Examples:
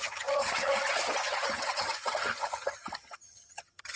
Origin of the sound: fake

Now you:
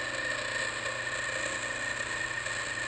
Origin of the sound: real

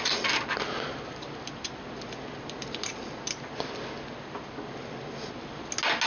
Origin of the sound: real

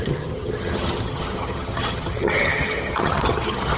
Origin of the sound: fake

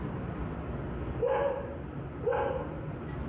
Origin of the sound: real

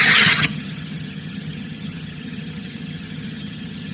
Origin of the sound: fake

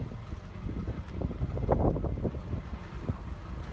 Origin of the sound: real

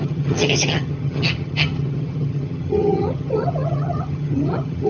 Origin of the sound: fake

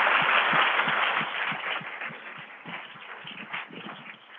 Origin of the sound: real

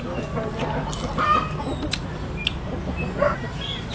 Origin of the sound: real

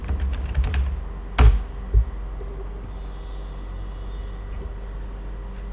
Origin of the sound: real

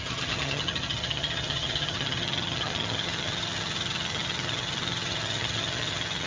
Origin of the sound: fake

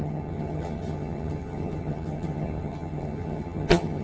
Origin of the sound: fake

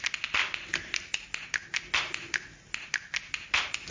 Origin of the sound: real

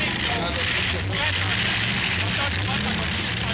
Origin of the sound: real